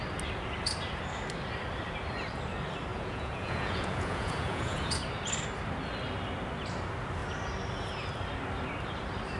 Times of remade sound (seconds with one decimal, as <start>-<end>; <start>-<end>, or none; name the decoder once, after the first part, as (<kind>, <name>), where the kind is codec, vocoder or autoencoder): 2.9-4.9 (vocoder, Vocos)

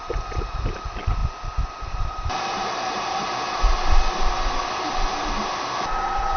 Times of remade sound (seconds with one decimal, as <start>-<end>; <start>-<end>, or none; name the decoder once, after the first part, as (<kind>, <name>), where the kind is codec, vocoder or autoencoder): none

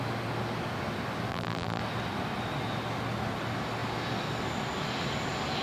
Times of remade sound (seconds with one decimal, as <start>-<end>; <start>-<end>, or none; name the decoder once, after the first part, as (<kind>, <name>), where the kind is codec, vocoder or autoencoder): 1.3-1.8 (vocoder, BigVGAN v2)

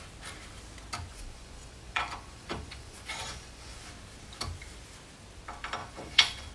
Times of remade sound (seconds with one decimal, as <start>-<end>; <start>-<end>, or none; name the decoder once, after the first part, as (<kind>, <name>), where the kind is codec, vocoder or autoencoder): 1.1-3.8 (vocoder, Vocos); 5.8-6.5

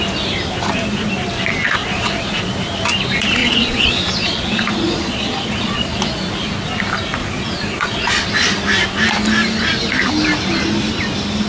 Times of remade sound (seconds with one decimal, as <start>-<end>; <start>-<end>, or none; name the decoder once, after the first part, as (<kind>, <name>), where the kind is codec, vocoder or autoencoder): 1.8-2.5 (vocoder, Vocos); 3.4-6.2; 7.2-8.1

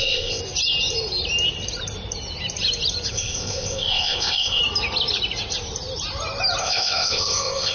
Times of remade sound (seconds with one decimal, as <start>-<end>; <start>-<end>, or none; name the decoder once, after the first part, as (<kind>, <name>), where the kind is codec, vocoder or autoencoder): 0.0-0.4 (codec, ZipCodec); 3.1-4.6; 6.6-7.7

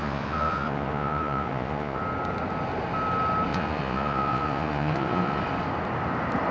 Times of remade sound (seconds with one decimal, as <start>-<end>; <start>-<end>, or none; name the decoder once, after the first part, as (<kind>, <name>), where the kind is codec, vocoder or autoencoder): 0.0-2.0 (vocoder, Vocos); 3.5-5.4

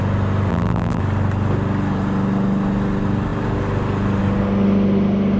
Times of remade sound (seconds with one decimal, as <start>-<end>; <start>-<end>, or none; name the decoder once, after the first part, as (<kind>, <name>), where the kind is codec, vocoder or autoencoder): 0.5-1.0 (vocoder, BigVGAN v2)